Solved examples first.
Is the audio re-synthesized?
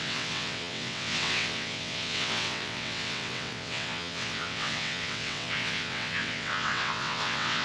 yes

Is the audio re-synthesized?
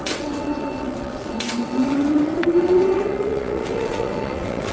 yes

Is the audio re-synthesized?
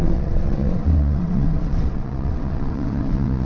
yes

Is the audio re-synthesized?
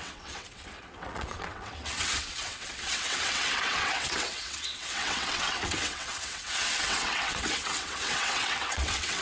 yes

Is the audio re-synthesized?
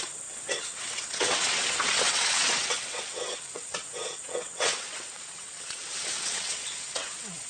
yes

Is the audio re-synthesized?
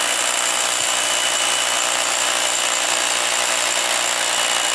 no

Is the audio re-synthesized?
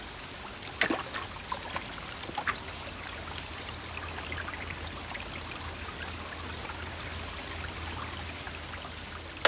no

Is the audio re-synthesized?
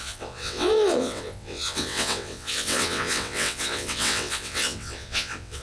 yes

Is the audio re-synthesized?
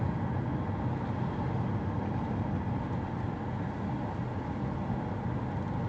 no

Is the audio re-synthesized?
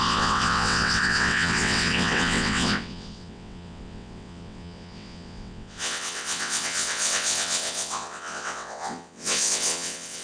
yes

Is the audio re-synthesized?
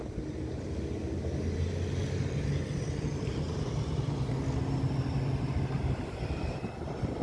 no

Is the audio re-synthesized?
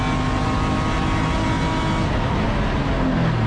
no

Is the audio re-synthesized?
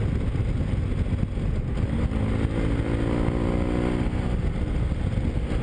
no